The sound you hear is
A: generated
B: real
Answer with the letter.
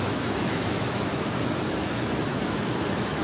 A